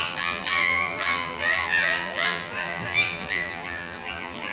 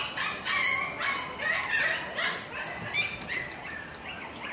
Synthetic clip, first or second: first